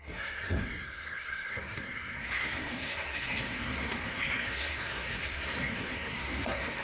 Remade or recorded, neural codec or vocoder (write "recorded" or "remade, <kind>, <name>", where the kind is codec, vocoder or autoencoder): remade, codec, SNAC